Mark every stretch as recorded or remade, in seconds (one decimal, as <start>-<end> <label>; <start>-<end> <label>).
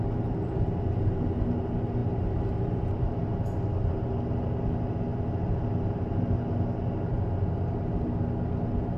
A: 0.0-9.0 recorded